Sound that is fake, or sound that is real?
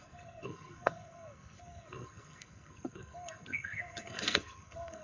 fake